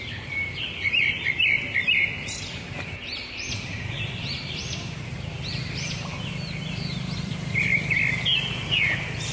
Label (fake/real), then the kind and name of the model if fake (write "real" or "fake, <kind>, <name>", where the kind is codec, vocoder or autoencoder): fake, vocoder, BigVGAN v2